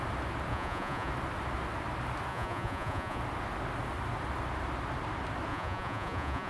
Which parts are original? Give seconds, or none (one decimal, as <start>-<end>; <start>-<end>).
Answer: 0.0-0.5; 1.1-2.3; 3.2-5.5